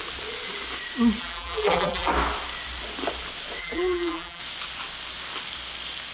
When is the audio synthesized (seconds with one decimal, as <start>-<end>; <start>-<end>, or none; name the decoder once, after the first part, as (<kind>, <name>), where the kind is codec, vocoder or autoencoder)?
1.2-2.1 (vocoder, BigVGAN v2); 3.6-4.4